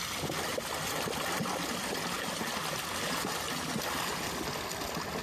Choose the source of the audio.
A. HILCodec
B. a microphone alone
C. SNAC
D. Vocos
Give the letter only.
B